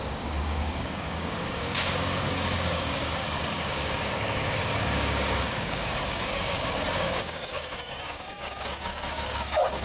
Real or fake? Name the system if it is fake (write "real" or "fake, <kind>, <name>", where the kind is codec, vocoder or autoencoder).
fake, codec, DAC